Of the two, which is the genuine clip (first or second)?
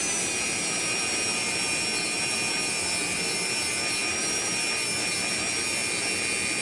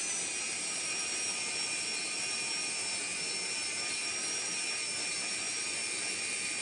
first